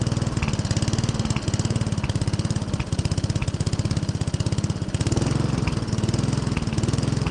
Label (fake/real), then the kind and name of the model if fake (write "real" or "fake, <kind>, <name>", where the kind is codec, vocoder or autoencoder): real